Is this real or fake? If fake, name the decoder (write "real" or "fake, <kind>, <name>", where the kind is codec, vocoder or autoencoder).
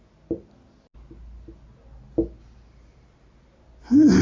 real